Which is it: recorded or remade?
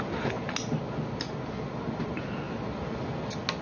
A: recorded